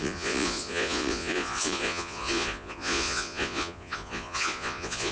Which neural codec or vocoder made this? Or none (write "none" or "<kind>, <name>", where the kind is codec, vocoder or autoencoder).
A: vocoder, Vocos